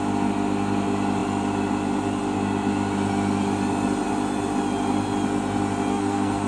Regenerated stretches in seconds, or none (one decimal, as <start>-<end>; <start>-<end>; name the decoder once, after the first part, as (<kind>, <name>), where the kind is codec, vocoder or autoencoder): 5.9-6.5 (codec, SNAC)